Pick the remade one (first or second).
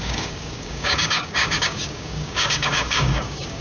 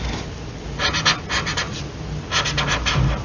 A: first